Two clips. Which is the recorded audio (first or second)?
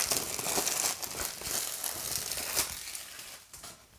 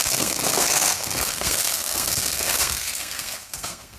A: first